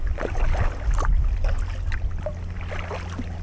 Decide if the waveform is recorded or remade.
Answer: recorded